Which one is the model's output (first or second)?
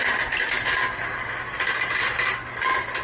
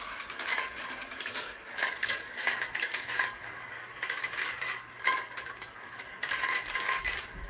second